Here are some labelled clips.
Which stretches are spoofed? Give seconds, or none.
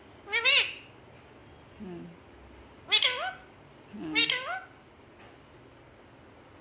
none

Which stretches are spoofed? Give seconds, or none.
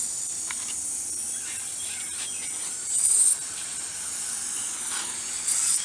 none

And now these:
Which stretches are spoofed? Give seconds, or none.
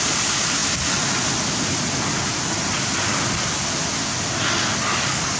4.9-5.4 (codec, DAC)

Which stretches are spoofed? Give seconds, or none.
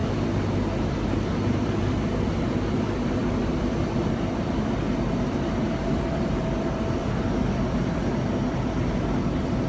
0.9-8.0 (vocoder, BigVGAN v2); 9.2-9.7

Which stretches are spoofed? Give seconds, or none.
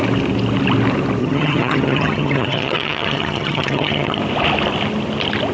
1.2-4.2 (vocoder, HiFi-GAN)